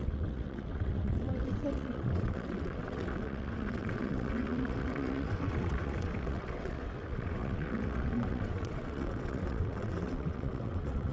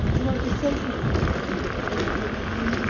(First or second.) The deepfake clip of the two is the first